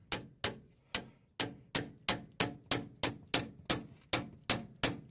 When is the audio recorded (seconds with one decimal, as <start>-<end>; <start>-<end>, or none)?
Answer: 0.0-5.1